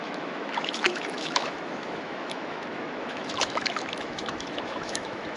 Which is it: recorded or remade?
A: remade